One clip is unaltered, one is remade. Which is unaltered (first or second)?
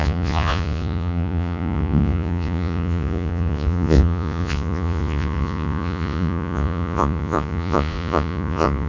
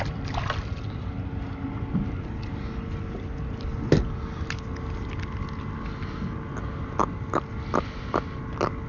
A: second